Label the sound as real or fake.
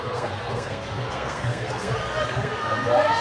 fake